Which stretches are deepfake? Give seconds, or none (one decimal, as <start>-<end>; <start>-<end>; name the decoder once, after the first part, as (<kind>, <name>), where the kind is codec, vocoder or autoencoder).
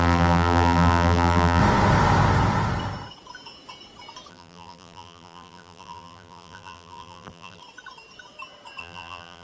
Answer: 0.0-1.6 (vocoder, BigVGAN v2); 4.3-7.6; 8.8-9.4